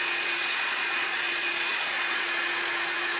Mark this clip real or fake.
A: fake